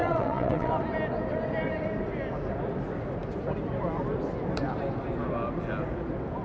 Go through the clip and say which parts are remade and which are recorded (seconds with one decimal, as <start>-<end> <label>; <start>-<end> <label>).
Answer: 0.0-0.7 remade; 0.7-6.4 recorded